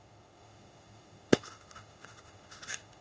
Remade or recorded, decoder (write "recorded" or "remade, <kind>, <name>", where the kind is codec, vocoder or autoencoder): remade, autoencoder, DAC-VAE